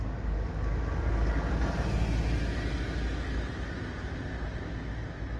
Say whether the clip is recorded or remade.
recorded